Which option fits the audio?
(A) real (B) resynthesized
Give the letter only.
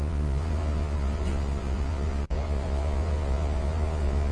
B